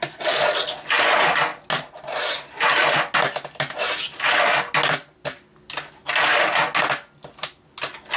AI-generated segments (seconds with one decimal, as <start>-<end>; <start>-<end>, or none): none